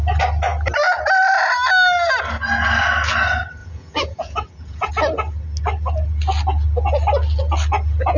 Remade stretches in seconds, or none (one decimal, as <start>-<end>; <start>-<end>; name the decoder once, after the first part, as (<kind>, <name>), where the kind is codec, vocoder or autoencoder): 3.6-4.9 (vocoder, Vocos)